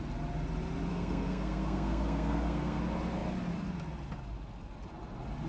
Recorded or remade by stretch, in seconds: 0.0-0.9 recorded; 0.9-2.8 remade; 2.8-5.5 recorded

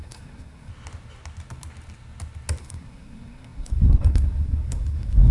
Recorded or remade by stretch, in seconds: 0.0-0.7 remade; 0.7-2.6 recorded; 2.6-5.3 remade